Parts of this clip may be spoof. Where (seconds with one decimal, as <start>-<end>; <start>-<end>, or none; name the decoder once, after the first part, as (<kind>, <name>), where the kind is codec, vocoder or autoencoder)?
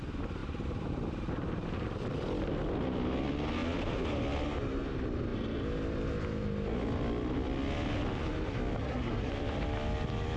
8.8-9.3 (codec, SNAC)